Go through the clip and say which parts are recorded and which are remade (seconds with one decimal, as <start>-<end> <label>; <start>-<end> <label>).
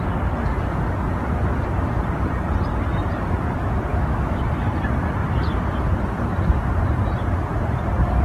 0.0-3.9 recorded; 3.9-4.4 remade; 4.4-8.2 recorded